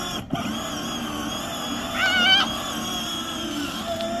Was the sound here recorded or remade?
recorded